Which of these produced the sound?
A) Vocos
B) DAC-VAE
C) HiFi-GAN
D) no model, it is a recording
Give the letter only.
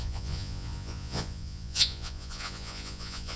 A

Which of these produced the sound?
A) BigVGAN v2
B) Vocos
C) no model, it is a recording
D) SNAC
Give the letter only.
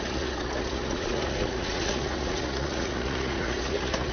B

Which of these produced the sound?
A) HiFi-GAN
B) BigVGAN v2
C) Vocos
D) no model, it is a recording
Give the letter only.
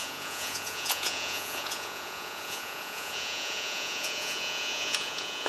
C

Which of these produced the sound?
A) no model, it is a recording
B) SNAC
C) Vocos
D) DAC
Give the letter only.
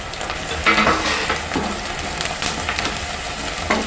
A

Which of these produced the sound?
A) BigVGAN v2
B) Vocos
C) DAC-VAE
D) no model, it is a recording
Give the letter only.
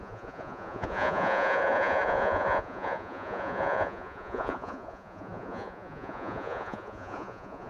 B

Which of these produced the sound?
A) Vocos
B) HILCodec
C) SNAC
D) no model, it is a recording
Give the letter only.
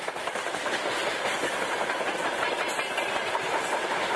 D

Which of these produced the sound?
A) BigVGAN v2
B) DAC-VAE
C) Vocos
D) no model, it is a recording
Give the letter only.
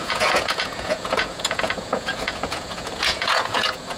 C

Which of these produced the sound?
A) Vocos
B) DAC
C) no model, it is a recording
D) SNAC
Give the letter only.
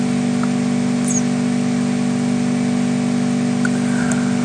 C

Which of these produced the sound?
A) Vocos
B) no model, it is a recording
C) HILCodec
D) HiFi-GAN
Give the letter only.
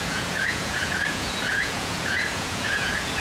A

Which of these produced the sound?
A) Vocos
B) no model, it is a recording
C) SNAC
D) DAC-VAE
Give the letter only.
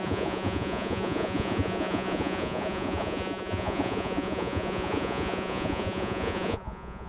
A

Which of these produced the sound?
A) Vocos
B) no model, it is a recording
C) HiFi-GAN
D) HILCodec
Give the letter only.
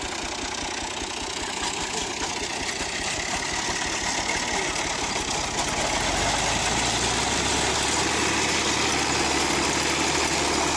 B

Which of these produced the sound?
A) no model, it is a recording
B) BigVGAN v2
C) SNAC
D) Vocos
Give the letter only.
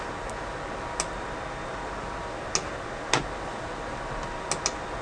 A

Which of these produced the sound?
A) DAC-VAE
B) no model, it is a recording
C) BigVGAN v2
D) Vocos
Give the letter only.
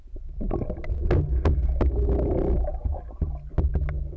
B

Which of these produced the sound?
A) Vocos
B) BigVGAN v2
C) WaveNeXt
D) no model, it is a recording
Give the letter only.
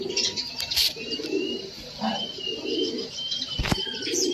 D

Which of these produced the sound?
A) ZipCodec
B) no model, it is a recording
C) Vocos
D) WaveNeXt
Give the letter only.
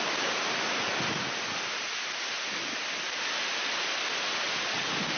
B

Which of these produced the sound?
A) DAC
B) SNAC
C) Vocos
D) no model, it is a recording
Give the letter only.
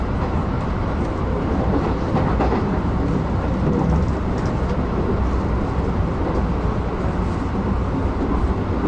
D